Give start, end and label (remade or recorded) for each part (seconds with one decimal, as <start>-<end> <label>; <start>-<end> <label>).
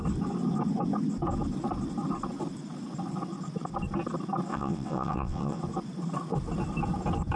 0.0-4.5 recorded; 4.5-5.6 remade; 5.6-7.4 recorded